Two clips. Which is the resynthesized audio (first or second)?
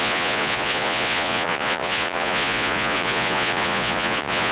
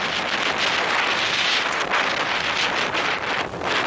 first